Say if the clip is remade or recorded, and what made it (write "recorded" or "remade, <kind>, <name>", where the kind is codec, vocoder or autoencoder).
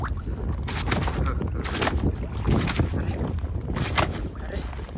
recorded